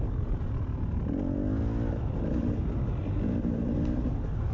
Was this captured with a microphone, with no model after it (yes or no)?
yes